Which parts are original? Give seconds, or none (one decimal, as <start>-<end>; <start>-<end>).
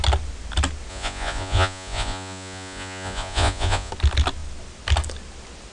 0.0-0.9; 3.9-5.7